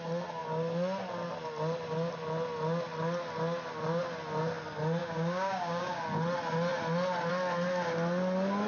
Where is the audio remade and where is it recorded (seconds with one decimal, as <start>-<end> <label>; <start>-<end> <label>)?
0.0-5.0 recorded; 5.0-6.0 remade; 6.0-8.7 recorded